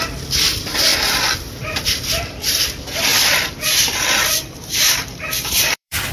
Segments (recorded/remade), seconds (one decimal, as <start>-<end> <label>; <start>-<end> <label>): 0.0-0.9 recorded; 0.9-2.6 remade; 2.6-3.1 recorded; 3.1-6.1 remade